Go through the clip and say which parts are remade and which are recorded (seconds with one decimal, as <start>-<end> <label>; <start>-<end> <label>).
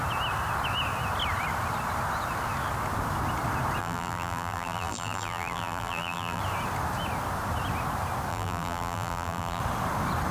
0.0-3.8 recorded; 3.8-6.4 remade; 6.4-8.3 recorded; 8.3-9.6 remade; 9.6-10.3 recorded